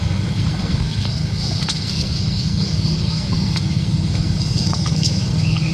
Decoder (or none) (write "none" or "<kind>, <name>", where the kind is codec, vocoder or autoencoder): codec, SNAC